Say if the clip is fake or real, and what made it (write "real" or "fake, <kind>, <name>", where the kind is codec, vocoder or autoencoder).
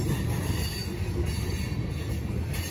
real